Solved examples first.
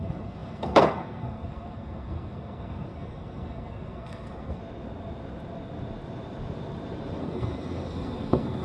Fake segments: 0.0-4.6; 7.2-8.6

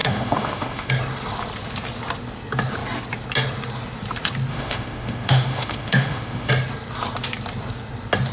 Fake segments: 0.0-0.9; 4.5-6.5

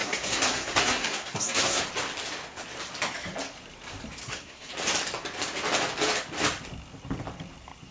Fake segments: 0.0-1.8; 4.2-4.7

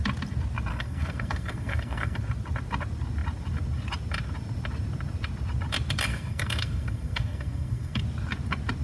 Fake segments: 0.7-2.2; 6.1-8.0